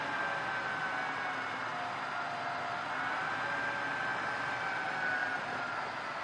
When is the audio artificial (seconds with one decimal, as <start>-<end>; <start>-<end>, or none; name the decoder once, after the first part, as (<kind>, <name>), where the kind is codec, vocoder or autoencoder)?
5.2-6.2 (vocoder, BigVGAN v2)